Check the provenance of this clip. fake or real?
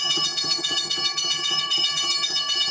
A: fake